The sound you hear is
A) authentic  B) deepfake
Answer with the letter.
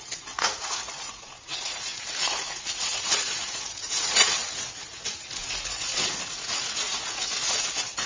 B